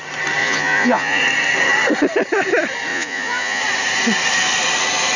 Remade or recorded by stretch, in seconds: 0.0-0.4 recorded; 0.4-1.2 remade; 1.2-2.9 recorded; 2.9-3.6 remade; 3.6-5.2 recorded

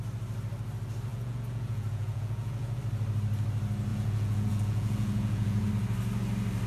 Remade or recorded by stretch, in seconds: 0.0-1.1 recorded; 1.1-2.8 remade; 2.8-3.9 recorded; 3.9-5.7 remade; 5.7-6.7 recorded

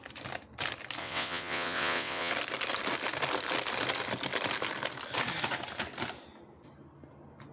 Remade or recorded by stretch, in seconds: 0.0-1.0 recorded; 1.0-2.3 remade; 2.3-7.5 recorded

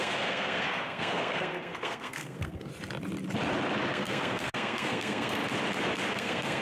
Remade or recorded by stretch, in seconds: 0.0-2.7 remade; 2.7-3.9 recorded; 3.9-5.4 remade; 5.4-6.1 recorded; 6.1-6.6 remade

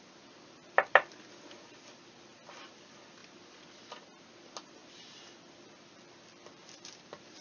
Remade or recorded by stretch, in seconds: 0.0-7.4 remade